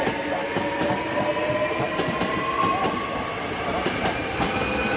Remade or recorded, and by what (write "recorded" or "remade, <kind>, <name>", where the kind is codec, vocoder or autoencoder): recorded